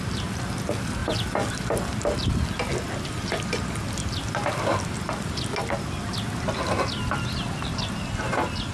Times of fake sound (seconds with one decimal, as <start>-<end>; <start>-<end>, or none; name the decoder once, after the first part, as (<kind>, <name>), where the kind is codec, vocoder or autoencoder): none